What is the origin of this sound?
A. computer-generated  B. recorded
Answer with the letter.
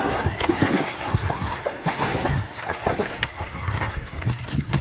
A